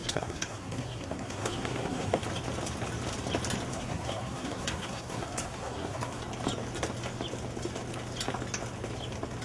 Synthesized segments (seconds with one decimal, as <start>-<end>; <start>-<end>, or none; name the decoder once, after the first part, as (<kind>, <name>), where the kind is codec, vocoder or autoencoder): 0.0-2.2 (codec, SNAC); 3.7-6.2